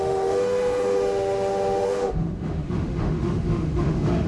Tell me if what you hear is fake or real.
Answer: fake